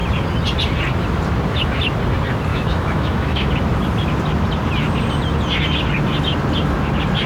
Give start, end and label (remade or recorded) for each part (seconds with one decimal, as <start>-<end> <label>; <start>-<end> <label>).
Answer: 0.0-2.5 recorded; 2.5-3.5 remade; 3.5-7.3 recorded